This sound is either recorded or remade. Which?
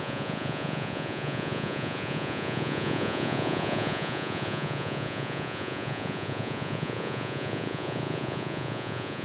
remade